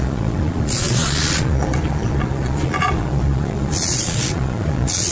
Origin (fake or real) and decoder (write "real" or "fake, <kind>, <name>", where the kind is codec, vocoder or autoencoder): fake, vocoder, Vocos